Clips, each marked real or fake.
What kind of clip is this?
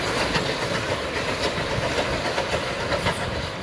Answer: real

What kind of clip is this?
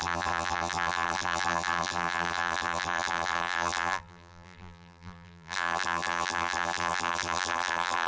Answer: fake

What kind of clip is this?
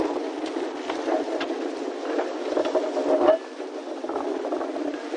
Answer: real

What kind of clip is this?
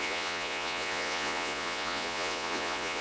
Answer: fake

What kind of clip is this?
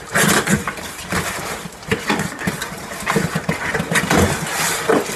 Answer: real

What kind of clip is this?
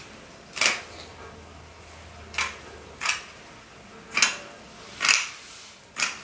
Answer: real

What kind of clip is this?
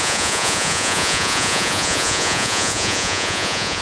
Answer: fake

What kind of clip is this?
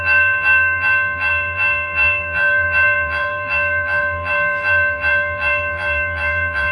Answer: fake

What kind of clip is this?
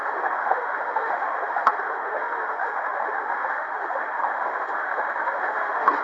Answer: fake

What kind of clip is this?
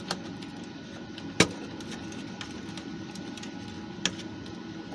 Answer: real